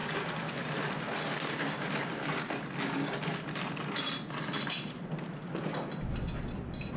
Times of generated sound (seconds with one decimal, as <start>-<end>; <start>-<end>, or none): none